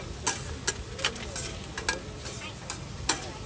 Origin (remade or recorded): recorded